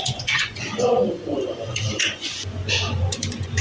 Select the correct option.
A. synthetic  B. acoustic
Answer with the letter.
A